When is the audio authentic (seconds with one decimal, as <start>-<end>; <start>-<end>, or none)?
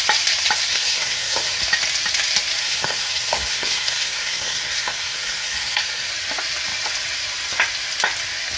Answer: 0.0-0.7; 1.6-2.6; 6.1-8.6